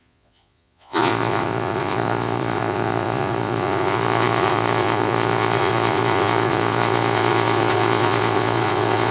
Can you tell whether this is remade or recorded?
remade